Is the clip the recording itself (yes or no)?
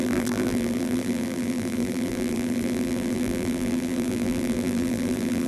no